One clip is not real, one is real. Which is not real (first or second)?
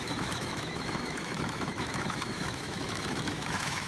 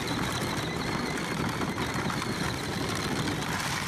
first